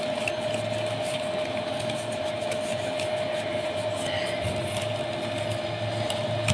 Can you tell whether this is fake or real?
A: real